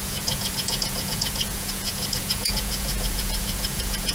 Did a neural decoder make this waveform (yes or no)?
yes